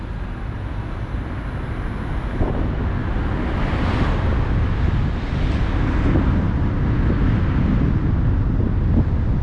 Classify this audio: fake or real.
real